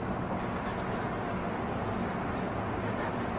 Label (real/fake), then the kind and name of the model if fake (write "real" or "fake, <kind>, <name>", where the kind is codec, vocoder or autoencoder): real